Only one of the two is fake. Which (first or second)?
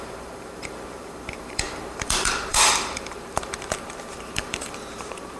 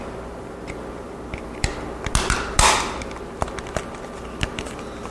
first